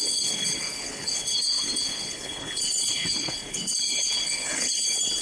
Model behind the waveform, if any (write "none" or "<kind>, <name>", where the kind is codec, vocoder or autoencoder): codec, HILCodec